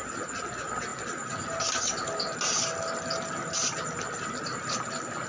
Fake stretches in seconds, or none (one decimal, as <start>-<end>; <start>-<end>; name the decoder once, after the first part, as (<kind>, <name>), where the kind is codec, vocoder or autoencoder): none